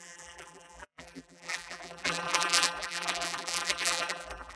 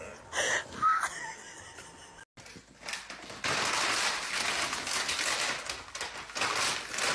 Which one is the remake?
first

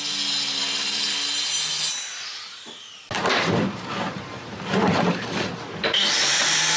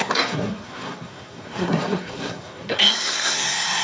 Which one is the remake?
second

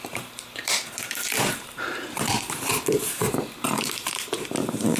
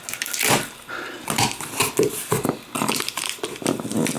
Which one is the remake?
first